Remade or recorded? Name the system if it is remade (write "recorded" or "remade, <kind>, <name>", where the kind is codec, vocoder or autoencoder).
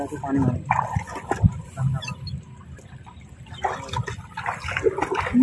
recorded